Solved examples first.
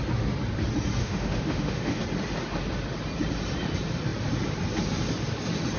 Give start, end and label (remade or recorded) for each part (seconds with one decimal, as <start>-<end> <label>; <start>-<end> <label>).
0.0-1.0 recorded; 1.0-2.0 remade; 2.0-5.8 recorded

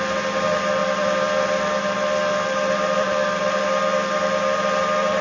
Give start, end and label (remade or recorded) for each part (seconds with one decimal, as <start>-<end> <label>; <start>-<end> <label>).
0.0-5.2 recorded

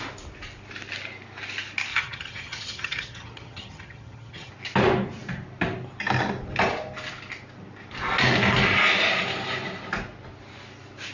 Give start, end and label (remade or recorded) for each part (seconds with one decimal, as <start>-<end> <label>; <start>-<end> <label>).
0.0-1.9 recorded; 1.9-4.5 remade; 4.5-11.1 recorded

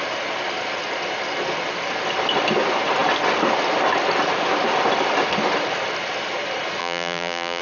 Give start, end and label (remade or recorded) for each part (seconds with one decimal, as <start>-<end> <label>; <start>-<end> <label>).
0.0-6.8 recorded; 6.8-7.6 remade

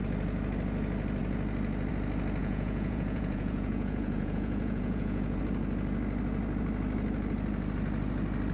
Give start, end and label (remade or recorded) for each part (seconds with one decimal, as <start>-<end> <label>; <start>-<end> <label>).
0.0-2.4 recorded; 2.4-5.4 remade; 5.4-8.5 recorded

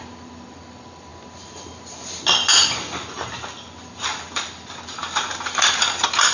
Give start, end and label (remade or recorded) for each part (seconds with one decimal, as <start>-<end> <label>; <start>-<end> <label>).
0.0-1.1 remade; 1.1-2.6 recorded; 2.6-5.0 remade; 5.0-6.3 recorded

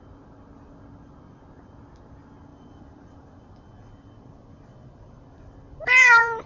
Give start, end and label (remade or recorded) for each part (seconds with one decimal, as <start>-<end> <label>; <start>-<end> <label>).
0.0-2.5 recorded; 2.5-6.5 remade